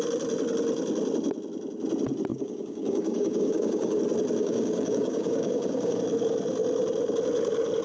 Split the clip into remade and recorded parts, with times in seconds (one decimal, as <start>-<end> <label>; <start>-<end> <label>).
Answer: 0.0-2.3 recorded; 2.3-4.0 remade; 4.0-4.4 recorded; 4.4-6.0 remade; 6.0-7.8 recorded